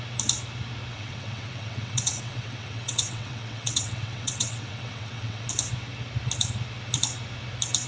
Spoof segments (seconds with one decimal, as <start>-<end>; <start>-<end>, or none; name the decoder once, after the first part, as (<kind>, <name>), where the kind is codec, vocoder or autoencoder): 0.9-5.5 (vocoder, WaveNeXt)